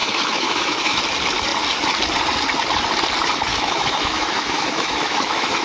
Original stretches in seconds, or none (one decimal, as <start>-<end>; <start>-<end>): 1.0-3.5